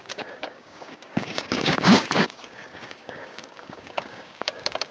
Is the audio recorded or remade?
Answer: remade